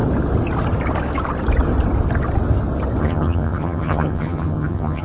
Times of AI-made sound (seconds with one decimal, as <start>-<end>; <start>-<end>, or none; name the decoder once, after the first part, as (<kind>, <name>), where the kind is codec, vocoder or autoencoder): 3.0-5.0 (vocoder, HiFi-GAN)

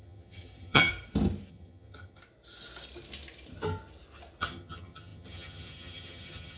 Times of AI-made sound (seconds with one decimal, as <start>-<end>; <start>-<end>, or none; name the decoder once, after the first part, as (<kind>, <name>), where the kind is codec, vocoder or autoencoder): 0.0-0.9 (vocoder, HiFi-GAN); 1.5-2.2; 4.4-6.6

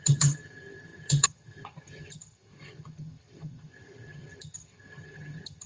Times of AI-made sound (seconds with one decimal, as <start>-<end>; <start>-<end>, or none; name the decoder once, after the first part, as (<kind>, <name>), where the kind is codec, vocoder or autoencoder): 0.0-5.7 (vocoder, HiFi-GAN)

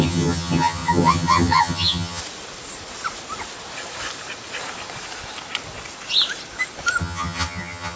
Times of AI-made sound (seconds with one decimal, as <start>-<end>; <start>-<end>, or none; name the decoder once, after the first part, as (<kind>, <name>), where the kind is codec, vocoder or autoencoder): 0.0-2.2 (vocoder, HiFi-GAN); 7.0-8.0

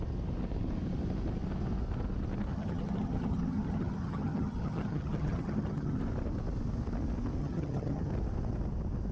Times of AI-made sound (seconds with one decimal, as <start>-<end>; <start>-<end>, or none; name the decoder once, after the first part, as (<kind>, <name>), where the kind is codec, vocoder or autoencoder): 2.5-6.0 (vocoder, HiFi-GAN); 7.4-8.1

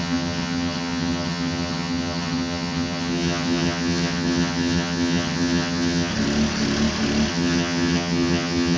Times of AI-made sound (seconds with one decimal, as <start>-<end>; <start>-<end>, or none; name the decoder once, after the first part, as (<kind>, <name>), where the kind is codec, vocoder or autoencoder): 0.0-6.1 (vocoder, HiFi-GAN); 7.3-8.8